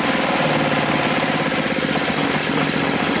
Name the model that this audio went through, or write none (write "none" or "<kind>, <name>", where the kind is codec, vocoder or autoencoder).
none